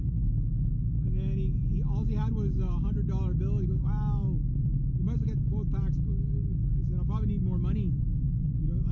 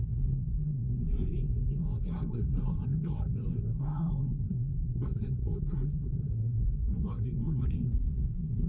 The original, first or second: first